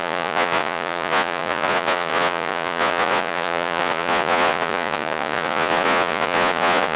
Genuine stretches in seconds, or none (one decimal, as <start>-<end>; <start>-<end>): none